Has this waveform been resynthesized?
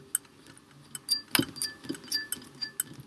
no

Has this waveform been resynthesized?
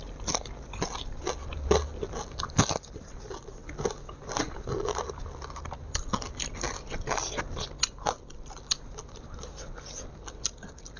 no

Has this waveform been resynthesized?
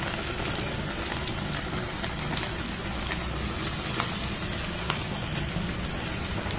no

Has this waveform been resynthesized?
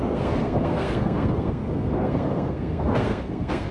yes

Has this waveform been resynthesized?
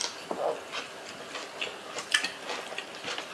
no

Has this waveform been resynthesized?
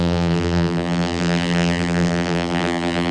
yes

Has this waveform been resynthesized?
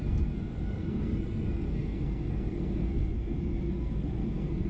yes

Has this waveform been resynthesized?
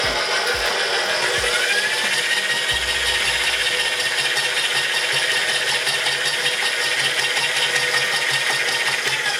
no